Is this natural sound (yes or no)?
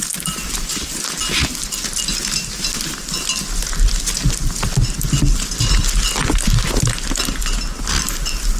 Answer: yes